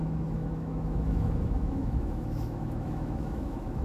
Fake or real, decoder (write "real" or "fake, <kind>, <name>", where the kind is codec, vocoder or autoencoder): fake, autoencoder, DAC-VAE